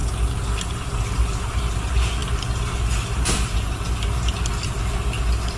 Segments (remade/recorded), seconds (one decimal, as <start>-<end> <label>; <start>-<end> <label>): 0.0-5.6 recorded